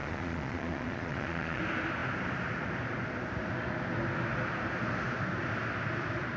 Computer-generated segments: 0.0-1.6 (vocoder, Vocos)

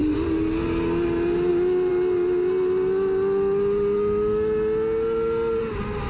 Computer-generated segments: none

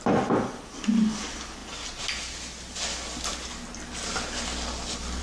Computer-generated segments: none

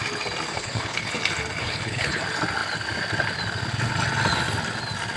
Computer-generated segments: 0.5-1.1 (codec, HILCodec); 1.6-2.2

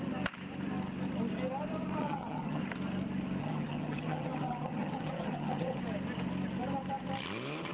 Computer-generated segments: 2.0-2.6 (vocoder, HiFi-GAN); 3.4-5.8

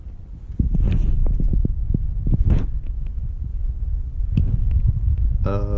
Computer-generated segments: none

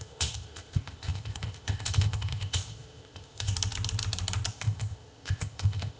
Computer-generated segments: 0.0-3.5 (codec, ZipCodec); 4.5-6.0

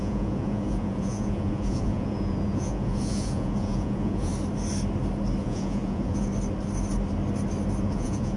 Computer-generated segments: 0.0-4.3 (vocoder, Vocos); 5.4-6.3; 7.8-8.4